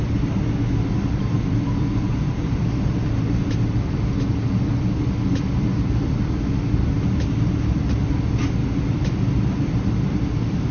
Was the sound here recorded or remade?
recorded